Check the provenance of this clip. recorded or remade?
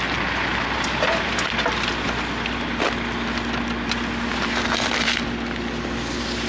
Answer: recorded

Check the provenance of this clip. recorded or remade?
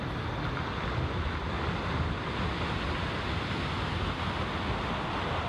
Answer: recorded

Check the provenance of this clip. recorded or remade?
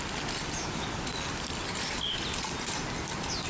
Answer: recorded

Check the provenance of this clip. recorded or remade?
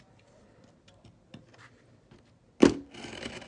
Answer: recorded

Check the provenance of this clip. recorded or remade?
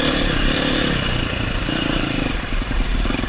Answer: remade